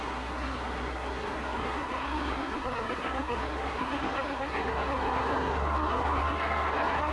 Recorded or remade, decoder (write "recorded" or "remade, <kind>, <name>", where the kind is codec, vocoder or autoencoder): remade, codec, SNAC